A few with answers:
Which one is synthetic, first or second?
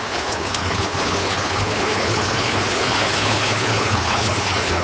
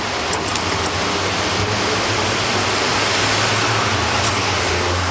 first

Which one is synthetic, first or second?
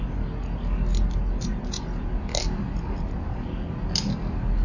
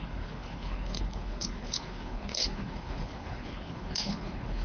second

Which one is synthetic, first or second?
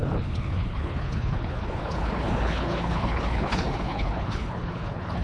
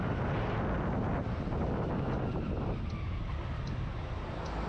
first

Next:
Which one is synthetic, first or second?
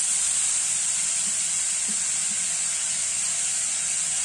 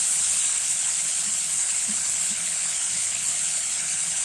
second